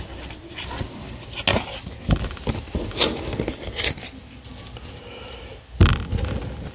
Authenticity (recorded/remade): recorded